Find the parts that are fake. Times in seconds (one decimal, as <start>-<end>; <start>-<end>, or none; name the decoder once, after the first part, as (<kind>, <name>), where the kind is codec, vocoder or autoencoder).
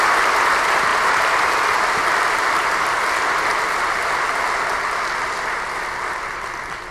none